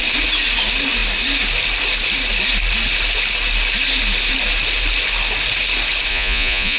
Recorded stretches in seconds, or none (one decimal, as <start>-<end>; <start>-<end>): 0.0-6.1